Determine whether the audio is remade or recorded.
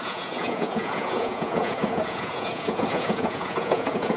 remade